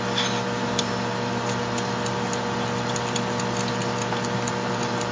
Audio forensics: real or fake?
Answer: real